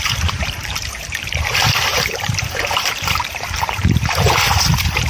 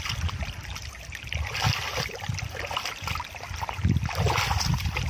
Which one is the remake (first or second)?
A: first